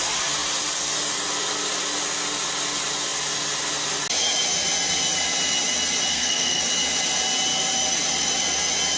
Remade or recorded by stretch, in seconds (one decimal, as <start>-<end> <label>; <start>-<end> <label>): 0.0-6.1 recorded; 6.1-6.6 remade; 6.6-9.0 recorded

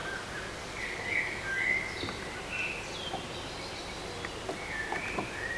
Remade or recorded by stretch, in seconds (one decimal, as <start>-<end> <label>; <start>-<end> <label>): 0.0-1.8 remade; 1.8-5.6 recorded

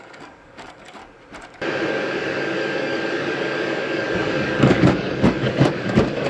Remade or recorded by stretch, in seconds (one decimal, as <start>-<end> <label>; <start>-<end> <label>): 0.0-1.0 remade; 1.0-1.9 recorded; 1.9-6.3 remade

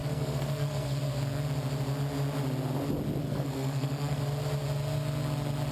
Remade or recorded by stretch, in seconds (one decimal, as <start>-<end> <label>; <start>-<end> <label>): 0.0-1.0 remade; 1.0-3.2 recorded; 3.2-4.2 remade; 4.2-5.7 recorded

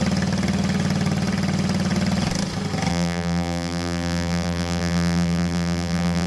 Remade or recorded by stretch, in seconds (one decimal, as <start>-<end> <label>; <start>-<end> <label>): 0.0-2.9 recorded; 2.9-6.3 remade

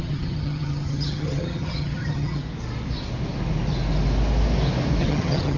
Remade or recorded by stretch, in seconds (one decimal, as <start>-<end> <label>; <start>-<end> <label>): 0.0-2.4 remade; 2.4-5.0 recorded; 5.0-5.6 remade

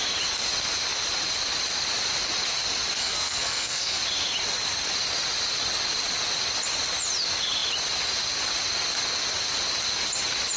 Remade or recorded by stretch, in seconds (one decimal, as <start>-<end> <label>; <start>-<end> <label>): 0.0-3.0 recorded; 3.0-4.0 remade; 4.0-10.6 recorded